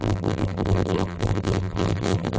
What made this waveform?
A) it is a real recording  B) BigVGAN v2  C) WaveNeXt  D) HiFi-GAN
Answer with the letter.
B